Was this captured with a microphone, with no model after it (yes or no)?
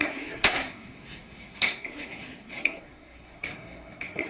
no